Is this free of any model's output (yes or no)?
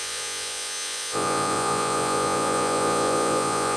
no